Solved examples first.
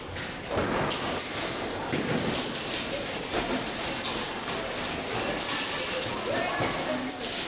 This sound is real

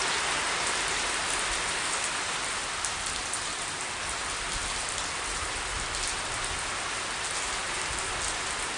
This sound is real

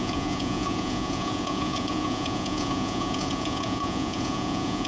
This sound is fake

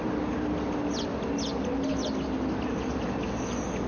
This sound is real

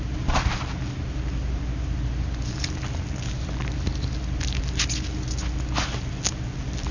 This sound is real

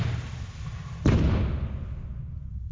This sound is real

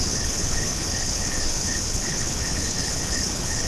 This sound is fake